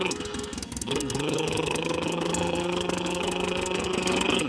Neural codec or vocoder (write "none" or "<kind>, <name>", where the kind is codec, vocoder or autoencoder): codec, SNAC